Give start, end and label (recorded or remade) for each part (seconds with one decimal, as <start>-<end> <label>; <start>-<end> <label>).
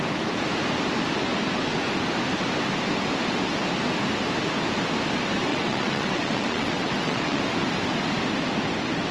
0.0-5.5 recorded; 5.5-7.4 remade; 7.4-9.1 recorded